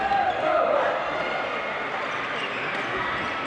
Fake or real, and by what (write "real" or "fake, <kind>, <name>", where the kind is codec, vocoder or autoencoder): real